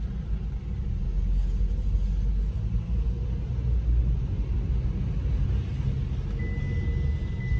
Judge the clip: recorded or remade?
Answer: recorded